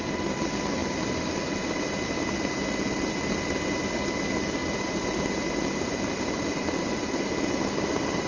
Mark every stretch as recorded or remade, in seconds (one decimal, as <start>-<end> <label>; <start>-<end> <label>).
0.0-0.8 recorded; 0.8-1.4 remade; 1.4-8.3 recorded